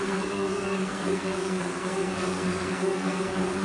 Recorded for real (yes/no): no